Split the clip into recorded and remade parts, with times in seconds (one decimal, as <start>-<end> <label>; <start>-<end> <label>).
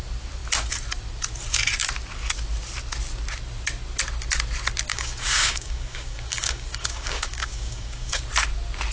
0.0-4.9 recorded; 4.9-8.2 remade; 8.2-8.9 recorded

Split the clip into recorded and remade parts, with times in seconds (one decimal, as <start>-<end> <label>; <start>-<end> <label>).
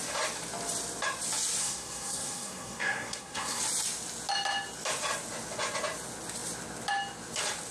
0.0-1.6 recorded; 1.6-3.6 remade; 3.6-7.7 recorded